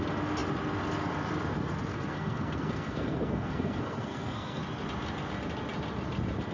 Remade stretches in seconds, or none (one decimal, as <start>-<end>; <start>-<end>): 1.9-4.6